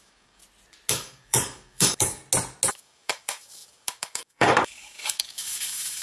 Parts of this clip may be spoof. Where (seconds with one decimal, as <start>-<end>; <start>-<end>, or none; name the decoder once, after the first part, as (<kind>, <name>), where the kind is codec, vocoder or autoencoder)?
0.0-0.4 (codec, DAC); 0.9-2.2; 2.7-6.0

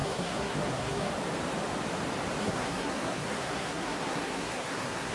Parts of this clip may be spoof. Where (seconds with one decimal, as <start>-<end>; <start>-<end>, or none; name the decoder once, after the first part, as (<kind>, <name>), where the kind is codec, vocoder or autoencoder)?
0.0-1.1 (codec, SNAC); 2.4-5.1

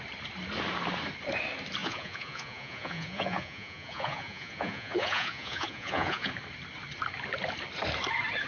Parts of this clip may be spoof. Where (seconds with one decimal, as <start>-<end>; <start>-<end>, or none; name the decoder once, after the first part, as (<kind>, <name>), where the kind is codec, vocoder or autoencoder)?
1.8-6.3 (vocoder, Vocos)

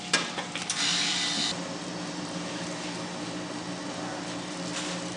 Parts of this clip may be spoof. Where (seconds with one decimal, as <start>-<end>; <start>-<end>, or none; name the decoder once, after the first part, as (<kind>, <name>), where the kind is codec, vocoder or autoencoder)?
none

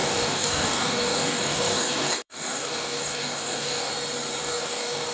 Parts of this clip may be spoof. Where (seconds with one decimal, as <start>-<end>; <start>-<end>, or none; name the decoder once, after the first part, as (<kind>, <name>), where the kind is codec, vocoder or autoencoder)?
0.0-3.9 (codec, DAC); 4.4-5.1

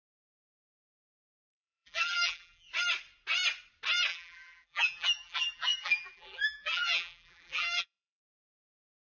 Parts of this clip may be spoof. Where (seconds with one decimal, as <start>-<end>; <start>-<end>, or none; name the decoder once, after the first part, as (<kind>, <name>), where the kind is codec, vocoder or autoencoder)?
1.0-2.7 (vocoder, BigVGAN v2); 4.1-9.1

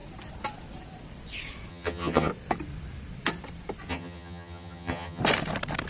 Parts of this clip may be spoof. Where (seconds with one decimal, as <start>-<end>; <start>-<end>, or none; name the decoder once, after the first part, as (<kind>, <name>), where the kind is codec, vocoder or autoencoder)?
1.7-2.3 (vocoder, HiFi-GAN); 3.9-5.2